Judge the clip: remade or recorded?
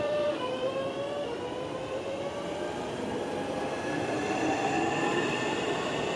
remade